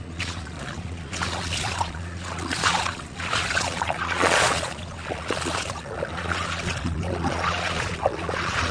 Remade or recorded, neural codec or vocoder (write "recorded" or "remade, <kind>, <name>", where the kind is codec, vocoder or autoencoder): remade, vocoder, Vocos